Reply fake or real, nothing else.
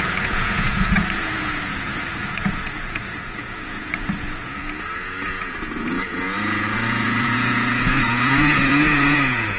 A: fake